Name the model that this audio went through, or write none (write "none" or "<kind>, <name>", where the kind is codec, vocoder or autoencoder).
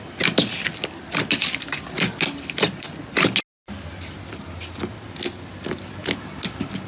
none